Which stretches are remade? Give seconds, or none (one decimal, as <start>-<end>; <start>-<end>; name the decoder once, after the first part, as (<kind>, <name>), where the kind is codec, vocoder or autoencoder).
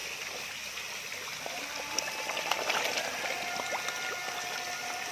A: none